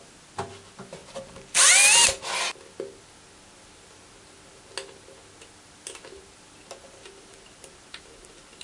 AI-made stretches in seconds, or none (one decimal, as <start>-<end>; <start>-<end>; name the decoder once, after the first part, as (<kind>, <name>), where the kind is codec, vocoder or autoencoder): none